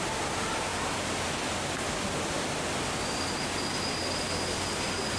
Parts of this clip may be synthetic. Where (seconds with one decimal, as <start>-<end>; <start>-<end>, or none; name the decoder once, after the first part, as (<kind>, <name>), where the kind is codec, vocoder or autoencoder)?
none